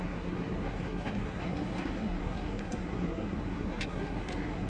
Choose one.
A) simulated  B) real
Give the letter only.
A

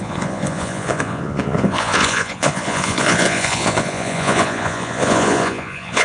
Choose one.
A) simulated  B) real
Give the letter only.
A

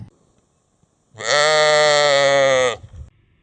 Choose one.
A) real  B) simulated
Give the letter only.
A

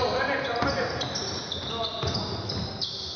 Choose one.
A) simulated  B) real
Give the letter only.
B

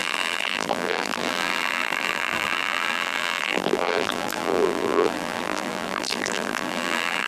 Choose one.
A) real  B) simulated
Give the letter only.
B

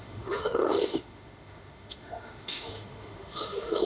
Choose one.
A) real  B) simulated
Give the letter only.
B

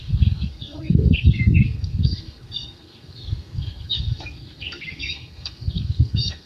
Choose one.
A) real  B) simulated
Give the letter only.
B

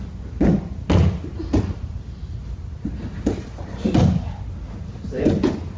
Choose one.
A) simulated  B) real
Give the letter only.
B